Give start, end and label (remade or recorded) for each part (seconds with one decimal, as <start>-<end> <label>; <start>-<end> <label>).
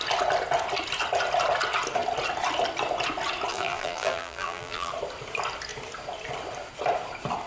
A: 0.0-3.5 recorded; 3.5-4.9 remade; 4.9-7.5 recorded